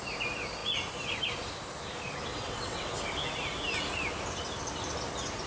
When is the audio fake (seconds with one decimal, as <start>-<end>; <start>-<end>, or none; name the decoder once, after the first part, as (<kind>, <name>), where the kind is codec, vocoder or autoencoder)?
2.3-2.9 (vocoder, WaveNeXt)